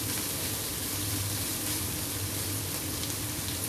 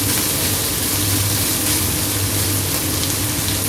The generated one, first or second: first